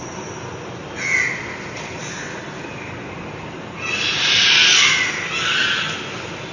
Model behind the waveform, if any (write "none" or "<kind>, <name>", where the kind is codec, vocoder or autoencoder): none